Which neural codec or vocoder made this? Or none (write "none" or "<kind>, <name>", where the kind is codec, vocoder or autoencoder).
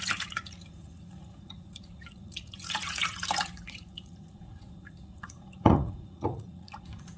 vocoder, Vocos